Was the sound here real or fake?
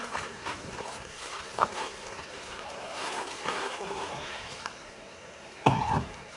fake